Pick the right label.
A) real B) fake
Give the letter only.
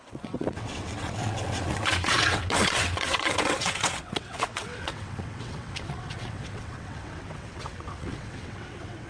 B